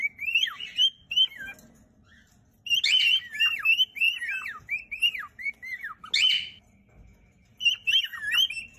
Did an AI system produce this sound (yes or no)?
no